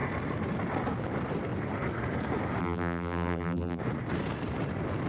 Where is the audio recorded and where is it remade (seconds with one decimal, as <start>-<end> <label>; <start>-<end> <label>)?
0.0-2.6 recorded; 2.6-3.8 remade; 3.8-5.1 recorded